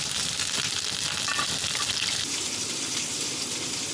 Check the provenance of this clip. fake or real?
real